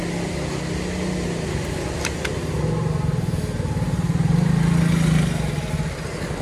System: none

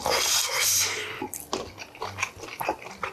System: none